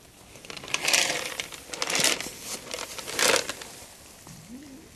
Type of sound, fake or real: fake